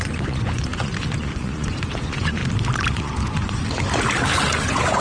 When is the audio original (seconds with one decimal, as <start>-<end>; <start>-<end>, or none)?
2.4-2.9; 3.6-4.3